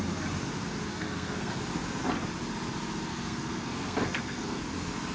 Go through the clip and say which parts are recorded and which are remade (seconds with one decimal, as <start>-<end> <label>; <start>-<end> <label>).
0.0-0.9 recorded; 0.9-1.6 remade; 1.6-3.1 recorded; 3.1-4.6 remade; 4.6-5.1 recorded